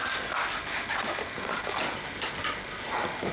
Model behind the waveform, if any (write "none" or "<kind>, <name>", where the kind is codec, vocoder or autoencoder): none